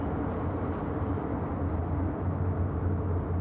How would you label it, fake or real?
real